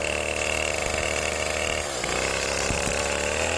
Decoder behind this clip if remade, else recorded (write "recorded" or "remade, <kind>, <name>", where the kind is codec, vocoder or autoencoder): recorded